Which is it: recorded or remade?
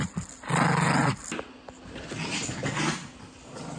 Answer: recorded